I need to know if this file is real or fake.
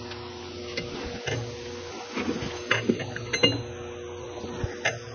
real